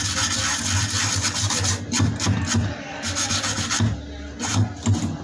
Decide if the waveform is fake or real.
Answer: real